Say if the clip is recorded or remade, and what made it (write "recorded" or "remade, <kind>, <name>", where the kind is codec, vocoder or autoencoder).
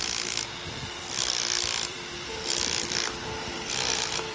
remade, vocoder, BigVGAN v2